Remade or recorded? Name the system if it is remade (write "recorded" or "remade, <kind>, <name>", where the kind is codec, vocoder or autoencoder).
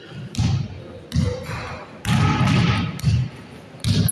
recorded